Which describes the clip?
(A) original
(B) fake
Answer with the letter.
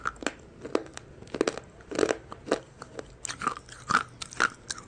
A